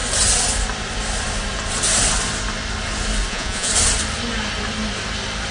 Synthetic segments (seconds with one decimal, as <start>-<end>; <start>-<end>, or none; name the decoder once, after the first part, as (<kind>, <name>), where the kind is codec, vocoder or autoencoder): 3.3-3.7 (vocoder, Vocos)